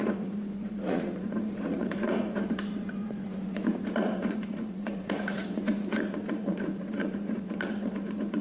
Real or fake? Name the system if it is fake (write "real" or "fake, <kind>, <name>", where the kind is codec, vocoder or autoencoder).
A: fake, vocoder, Vocos